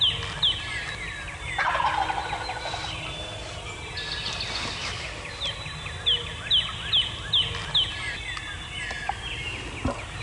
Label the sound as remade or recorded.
recorded